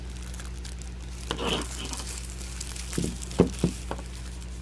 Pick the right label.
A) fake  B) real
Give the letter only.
B